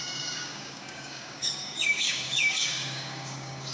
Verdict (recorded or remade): remade